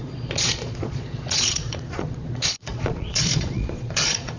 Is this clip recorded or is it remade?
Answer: remade